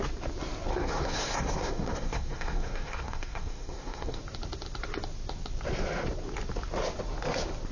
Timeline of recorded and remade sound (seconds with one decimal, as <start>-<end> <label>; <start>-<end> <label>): 0.0-0.7 recorded; 0.7-4.2 remade; 4.2-7.7 recorded